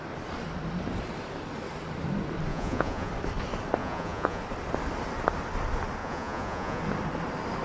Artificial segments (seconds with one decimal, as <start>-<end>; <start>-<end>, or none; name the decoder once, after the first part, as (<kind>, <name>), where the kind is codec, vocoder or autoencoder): 2.5-3.1 (vocoder, Vocos); 3.8-4.4; 6.0-6.8